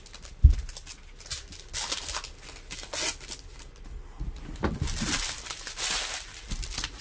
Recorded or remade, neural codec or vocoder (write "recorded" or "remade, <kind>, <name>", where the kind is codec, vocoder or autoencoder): recorded